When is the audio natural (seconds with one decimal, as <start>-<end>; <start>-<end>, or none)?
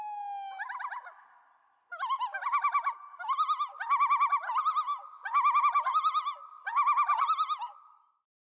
0.0-8.5